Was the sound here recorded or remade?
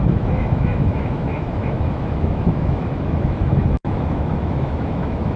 remade